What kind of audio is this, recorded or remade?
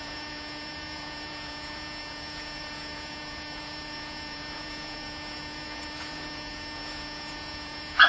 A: remade